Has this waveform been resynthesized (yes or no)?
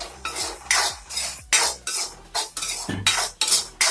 no